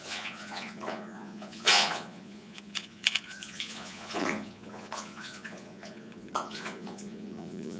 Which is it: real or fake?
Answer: fake